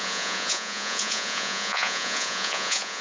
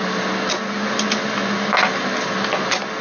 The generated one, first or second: first